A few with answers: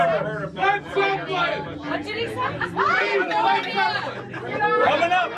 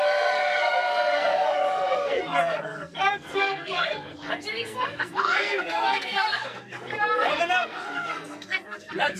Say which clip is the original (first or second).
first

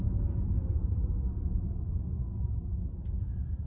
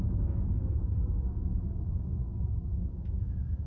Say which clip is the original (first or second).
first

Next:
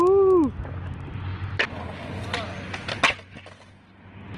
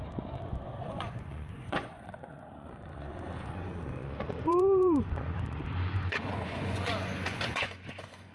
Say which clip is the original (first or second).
first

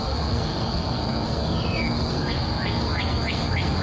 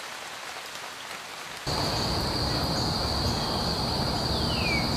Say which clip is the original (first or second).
second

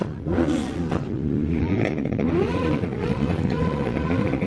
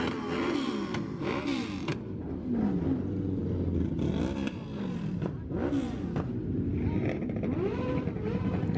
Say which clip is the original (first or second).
second